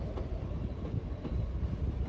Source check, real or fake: fake